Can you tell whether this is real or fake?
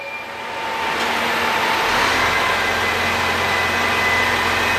real